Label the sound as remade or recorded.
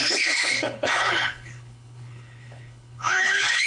remade